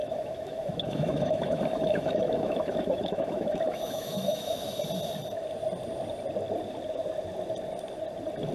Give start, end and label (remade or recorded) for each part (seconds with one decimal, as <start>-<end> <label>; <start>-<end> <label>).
0.0-4.8 remade; 4.8-8.5 recorded